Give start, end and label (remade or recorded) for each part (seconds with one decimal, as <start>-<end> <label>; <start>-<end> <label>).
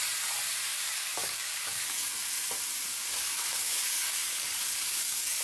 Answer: 0.0-0.7 recorded; 0.7-2.1 remade; 2.1-2.9 recorded; 2.9-5.4 remade